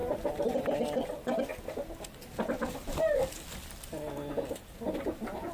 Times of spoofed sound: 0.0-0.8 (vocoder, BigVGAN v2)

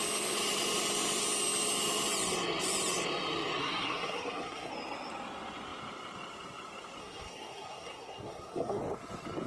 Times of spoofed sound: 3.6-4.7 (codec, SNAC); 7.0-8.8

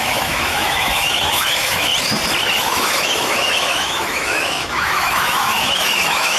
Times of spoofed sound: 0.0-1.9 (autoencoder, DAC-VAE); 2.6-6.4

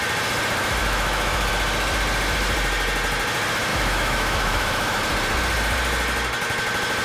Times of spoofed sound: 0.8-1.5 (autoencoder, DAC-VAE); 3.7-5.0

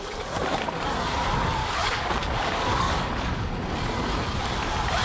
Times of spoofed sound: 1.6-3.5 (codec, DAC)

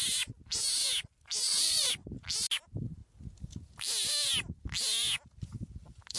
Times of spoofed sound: 1.5-2.1 (vocoder, Vocos)

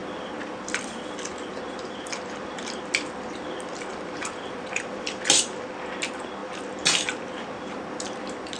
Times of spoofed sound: 1.5-5.7 (vocoder, BigVGAN v2)

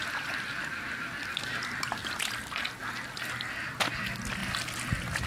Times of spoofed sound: none